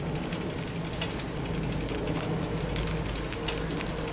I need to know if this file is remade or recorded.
recorded